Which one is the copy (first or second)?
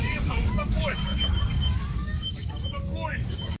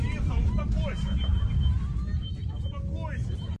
first